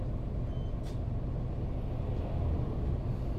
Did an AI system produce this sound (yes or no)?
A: no